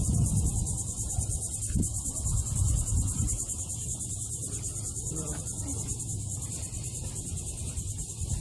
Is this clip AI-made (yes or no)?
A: yes